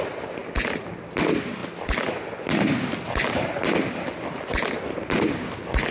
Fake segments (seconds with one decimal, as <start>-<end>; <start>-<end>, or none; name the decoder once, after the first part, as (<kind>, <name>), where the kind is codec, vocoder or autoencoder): none